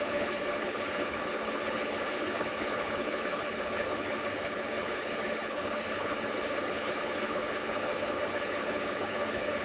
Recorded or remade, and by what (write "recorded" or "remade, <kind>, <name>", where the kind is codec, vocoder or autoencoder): remade, codec, HILCodec